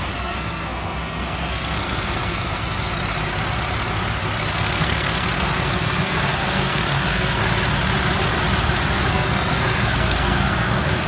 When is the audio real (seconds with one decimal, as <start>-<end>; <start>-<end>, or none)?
2.9-4.5; 7.4-9.1